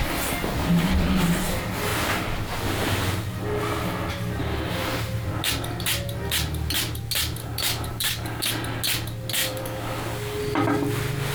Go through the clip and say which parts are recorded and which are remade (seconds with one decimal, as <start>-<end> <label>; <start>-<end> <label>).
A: 0.0-7.4 recorded; 7.4-8.5 remade; 8.5-9.4 recorded; 9.4-10.4 remade; 10.4-11.3 recorded